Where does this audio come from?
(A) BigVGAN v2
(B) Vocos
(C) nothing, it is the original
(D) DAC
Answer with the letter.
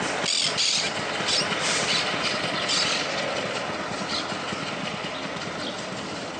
C